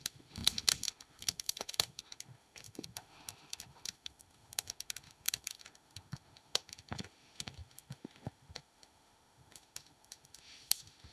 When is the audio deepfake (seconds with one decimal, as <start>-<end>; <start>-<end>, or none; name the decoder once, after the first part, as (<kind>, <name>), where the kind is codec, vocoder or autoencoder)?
0.0-11.1 (autoencoder, DAC-VAE)